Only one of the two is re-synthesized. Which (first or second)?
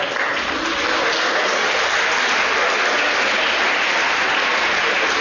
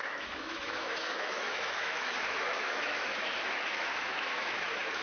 second